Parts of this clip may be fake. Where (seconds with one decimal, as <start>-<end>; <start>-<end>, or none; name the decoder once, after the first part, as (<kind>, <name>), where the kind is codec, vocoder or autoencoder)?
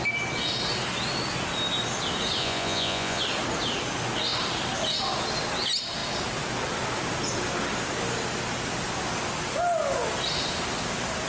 2.4-3.2 (vocoder, Vocos)